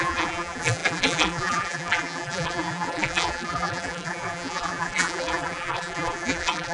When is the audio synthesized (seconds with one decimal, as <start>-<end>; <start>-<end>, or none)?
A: 0.0-6.7